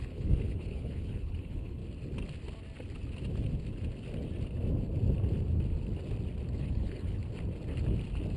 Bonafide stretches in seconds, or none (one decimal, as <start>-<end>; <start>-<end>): 1.8-6.6; 7.2-8.4